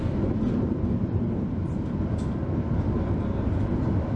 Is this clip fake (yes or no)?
no